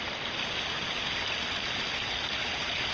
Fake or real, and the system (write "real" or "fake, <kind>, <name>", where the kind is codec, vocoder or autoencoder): real